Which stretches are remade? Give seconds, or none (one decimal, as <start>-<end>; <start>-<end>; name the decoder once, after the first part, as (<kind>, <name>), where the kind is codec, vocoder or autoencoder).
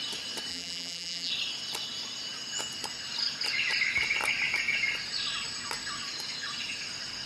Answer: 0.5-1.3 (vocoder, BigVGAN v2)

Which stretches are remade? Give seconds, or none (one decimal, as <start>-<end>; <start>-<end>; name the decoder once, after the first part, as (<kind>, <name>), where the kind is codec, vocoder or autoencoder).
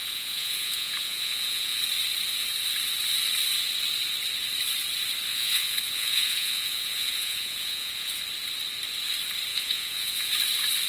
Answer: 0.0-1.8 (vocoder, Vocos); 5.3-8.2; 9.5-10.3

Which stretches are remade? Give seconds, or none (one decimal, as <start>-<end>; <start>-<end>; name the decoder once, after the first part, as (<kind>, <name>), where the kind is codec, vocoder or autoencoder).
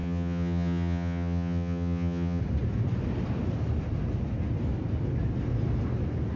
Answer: 0.0-2.4 (vocoder, HiFi-GAN)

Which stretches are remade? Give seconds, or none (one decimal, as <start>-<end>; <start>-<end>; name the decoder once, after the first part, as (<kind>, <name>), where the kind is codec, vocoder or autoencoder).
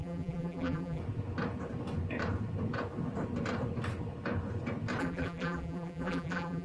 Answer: 0.0-1.0 (vocoder, BigVGAN v2); 5.0-6.6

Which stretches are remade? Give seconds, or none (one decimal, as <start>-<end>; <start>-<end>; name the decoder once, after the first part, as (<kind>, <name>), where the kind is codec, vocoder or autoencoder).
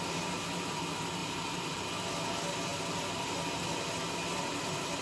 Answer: 1.2-1.8 (vocoder, BigVGAN v2); 2.7-3.5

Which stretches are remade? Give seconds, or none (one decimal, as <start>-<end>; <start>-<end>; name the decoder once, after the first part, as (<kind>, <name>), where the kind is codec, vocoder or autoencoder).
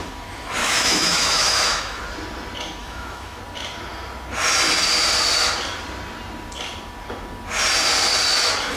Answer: 0.6-2.0 (autoencoder, DAC-VAE); 2.8-3.4